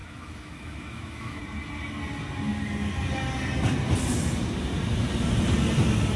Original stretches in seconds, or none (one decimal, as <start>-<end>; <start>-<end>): 1.4-6.2